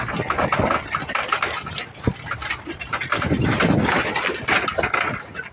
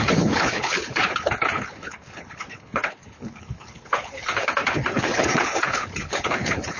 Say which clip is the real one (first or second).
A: first